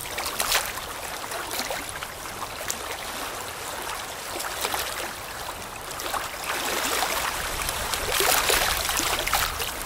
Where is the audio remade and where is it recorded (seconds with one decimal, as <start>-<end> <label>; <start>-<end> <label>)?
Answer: 0.0-9.9 recorded

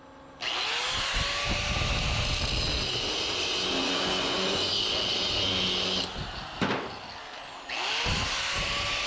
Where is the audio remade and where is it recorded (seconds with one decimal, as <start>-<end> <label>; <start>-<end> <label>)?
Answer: 0.0-3.8 recorded; 3.8-4.7 remade; 4.7-9.1 recorded

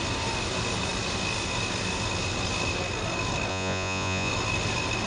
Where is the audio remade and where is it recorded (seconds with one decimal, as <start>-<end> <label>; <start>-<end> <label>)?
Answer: 0.0-3.5 recorded; 3.5-4.3 remade; 4.3-5.1 recorded

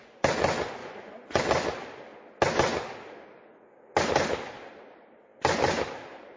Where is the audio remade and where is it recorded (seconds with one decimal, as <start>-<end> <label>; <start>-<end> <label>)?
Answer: 0.0-0.8 recorded; 0.8-1.4 remade; 1.4-6.4 recorded

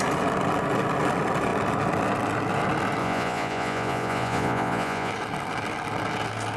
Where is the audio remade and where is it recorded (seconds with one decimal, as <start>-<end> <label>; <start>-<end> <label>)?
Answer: 0.0-3.0 recorded; 3.0-5.1 remade; 5.1-6.6 recorded